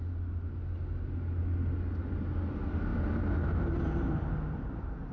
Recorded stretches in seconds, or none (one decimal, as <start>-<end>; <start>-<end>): 0.0-5.1